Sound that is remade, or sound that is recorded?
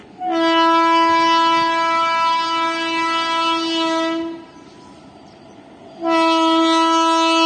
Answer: recorded